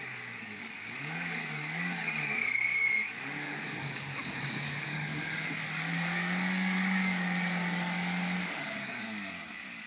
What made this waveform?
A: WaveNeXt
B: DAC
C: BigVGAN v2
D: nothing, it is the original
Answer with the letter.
B